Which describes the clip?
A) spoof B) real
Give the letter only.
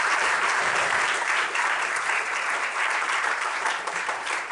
A